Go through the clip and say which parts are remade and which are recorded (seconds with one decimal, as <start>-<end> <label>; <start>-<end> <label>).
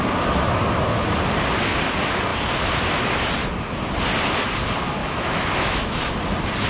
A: 0.0-5.0 recorded; 5.0-6.1 remade; 6.1-6.7 recorded